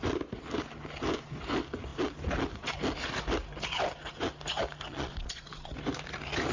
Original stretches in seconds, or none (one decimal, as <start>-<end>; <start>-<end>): 0.0-4.9; 5.7-6.5